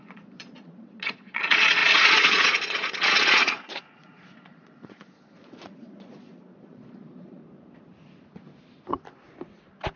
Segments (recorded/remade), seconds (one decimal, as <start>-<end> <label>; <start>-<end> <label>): 0.0-7.4 remade; 7.4-10.0 recorded